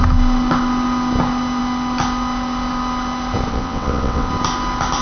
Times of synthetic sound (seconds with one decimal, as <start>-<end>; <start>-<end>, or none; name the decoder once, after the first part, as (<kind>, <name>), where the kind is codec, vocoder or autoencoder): 3.5-4.3 (vocoder, WaveNeXt)